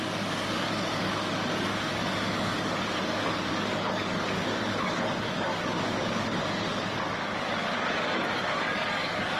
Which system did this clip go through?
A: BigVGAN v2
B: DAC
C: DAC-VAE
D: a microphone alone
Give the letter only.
B